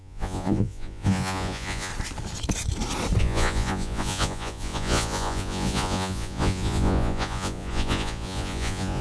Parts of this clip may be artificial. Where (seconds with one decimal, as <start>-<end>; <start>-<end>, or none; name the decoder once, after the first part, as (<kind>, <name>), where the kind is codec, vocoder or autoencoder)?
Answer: 0.0-1.9 (vocoder, Vocos); 3.2-9.0